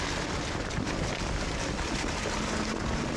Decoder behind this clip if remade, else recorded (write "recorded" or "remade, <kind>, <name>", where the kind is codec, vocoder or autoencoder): recorded